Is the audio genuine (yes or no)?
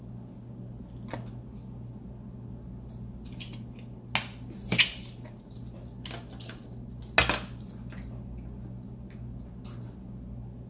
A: yes